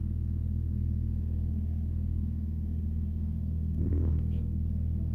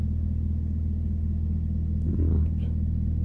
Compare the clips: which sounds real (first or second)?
second